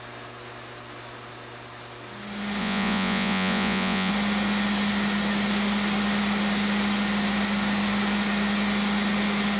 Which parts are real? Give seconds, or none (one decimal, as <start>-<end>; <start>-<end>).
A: 0.0-2.6; 4.1-9.6

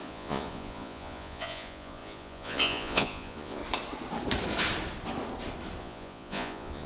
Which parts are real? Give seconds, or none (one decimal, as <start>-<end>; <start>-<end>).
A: 3.6-5.8

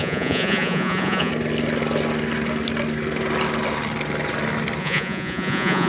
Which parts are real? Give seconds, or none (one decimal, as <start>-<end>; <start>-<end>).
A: 1.3-4.8

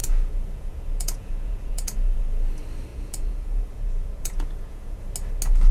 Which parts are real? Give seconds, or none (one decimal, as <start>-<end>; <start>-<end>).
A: 2.2-2.9; 5.0-5.7

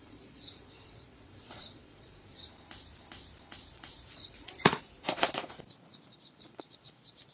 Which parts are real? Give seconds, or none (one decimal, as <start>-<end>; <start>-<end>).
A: 2.3-3.7; 4.8-6.1

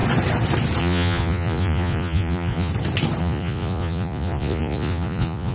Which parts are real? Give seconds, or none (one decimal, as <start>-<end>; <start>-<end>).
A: 0.0-0.8; 2.7-3.2

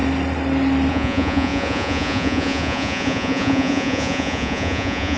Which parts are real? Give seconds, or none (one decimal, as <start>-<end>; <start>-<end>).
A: 0.0-0.9